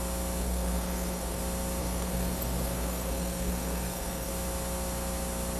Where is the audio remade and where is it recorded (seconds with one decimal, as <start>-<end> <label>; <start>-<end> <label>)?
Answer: 0.0-0.4 recorded; 0.4-1.4 remade; 1.4-1.8 recorded; 1.8-4.3 remade; 4.3-5.6 recorded